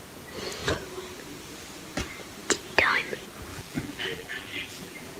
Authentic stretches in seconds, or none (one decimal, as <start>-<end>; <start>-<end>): 0.0-3.5

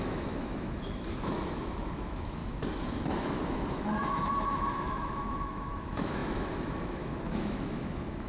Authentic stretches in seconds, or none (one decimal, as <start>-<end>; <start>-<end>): 2.4-3.0

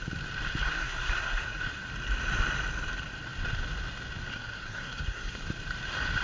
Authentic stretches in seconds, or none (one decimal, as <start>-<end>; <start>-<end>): 0.0-0.6; 1.6-4.3; 5.4-6.2

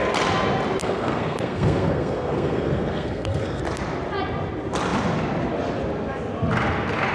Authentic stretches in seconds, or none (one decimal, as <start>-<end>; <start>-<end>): 0.0-0.8; 3.6-7.1

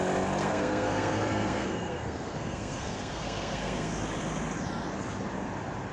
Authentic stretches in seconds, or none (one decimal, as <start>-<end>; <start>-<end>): 0.0-0.4; 3.9-5.9

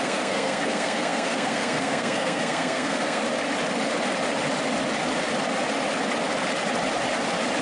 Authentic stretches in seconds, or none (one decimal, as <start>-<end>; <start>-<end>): 3.2-7.6

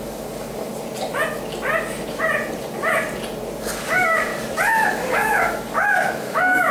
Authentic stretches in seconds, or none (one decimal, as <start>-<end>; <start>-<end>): 0.7-3.6; 4.3-4.9

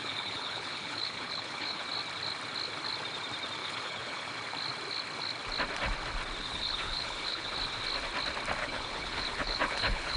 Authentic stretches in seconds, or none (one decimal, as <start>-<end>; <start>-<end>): 1.8-3.6; 4.3-6.4; 7.5-8.6